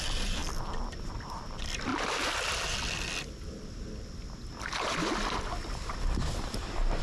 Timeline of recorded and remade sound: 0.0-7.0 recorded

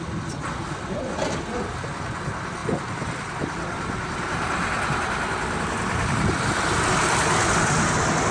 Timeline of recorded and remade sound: 0.0-8.3 recorded

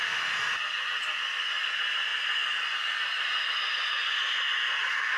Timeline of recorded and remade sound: 0.0-5.2 recorded

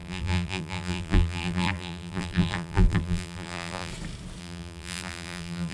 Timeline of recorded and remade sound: 0.0-3.9 remade; 3.9-4.4 recorded; 4.4-5.7 remade

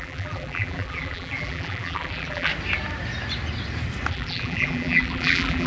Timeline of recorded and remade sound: 0.0-2.5 remade; 2.5-4.1 recorded; 4.1-5.7 remade

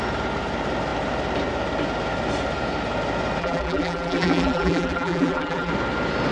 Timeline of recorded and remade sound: 0.0-3.4 recorded; 3.4-5.7 remade; 5.7-6.3 recorded

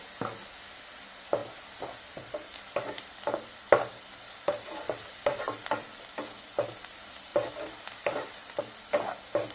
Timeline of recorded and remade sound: 0.0-1.4 recorded; 1.4-5.7 remade; 5.7-7.3 recorded; 7.3-8.6 remade; 8.6-9.5 recorded

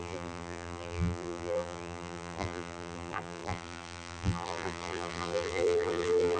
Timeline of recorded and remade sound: 0.0-6.4 remade